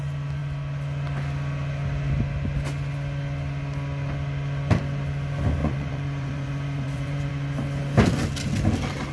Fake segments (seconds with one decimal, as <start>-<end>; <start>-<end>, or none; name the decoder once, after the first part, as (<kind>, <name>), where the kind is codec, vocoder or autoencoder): 5.6-7.3 (vocoder, Vocos)